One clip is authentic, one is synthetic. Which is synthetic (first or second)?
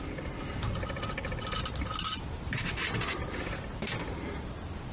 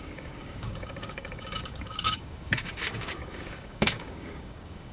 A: second